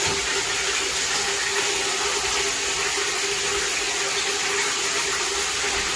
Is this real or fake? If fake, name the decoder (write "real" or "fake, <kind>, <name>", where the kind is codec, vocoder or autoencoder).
real